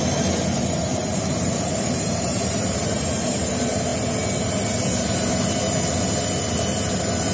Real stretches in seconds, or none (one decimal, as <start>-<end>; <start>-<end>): 0.0-0.9; 3.5-7.3